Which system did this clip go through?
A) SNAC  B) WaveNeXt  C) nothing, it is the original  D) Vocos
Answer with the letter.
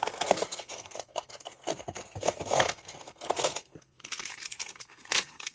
A